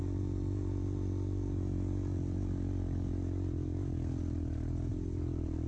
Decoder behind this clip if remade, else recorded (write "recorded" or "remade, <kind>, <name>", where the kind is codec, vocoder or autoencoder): recorded